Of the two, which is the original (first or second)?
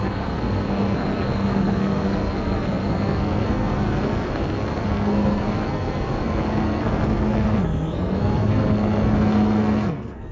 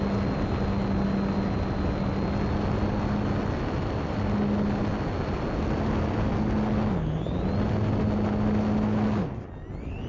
second